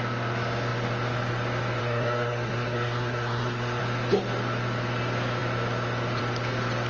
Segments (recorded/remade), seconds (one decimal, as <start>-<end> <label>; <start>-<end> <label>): 0.0-1.8 recorded; 1.8-3.8 remade; 3.8-6.9 recorded

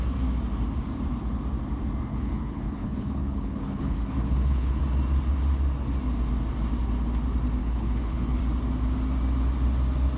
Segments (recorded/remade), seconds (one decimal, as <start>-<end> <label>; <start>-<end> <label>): 0.0-2.1 recorded; 2.1-4.8 remade; 4.8-7.6 recorded; 7.6-8.4 remade; 8.4-10.2 recorded

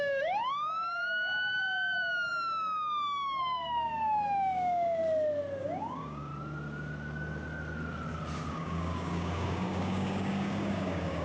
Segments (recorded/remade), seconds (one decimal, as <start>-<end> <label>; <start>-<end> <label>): 0.0-2.3 remade; 2.3-3.4 recorded; 3.4-5.0 remade; 5.0-5.6 recorded; 5.6-6.3 remade; 6.3-8.5 recorded; 8.5-11.2 remade

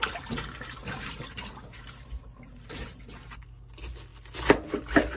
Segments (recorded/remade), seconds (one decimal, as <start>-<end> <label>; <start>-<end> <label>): 0.0-0.8 recorded; 0.8-3.0 remade; 3.0-5.2 recorded

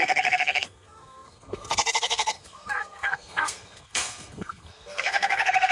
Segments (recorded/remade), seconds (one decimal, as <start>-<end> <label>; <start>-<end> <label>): 0.0-5.7 remade

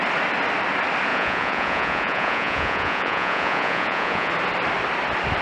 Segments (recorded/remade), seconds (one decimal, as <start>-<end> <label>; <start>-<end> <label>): 0.0-1.1 recorded; 1.1-4.3 remade; 4.3-5.4 recorded

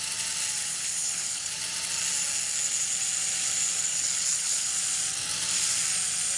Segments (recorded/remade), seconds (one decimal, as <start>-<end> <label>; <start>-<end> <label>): 0.0-0.7 recorded; 0.7-1.5 remade; 1.5-3.9 recorded; 3.9-4.7 remade; 4.7-6.4 recorded